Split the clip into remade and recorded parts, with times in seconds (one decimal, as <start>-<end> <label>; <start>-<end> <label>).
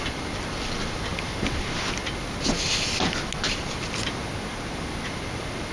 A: 0.0-5.7 recorded